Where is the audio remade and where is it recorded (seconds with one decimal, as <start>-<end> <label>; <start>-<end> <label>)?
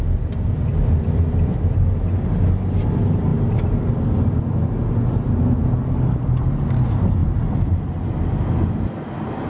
0.0-0.7 recorded; 0.7-1.9 remade; 1.9-7.2 recorded; 7.2-7.9 remade; 7.9-9.5 recorded